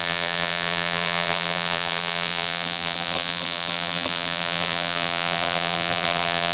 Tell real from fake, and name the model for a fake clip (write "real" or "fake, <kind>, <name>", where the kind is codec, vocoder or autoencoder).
fake, vocoder, BigVGAN v2